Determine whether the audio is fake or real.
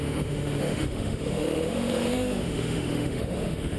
fake